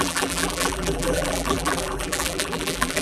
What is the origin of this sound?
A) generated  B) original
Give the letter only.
A